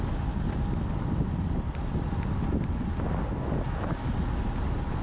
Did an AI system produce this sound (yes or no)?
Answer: no